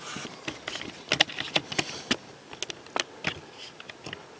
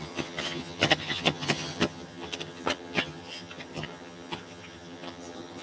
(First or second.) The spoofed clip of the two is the second